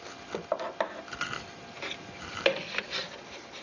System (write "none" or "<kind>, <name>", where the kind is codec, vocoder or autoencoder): none